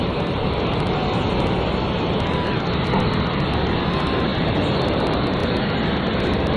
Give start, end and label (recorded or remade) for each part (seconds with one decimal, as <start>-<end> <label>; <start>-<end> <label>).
0.0-6.6 recorded